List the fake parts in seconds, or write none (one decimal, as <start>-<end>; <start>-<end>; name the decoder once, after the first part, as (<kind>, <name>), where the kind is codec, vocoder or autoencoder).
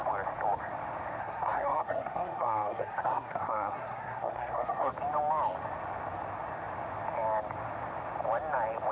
1.2-4.9 (codec, SNAC)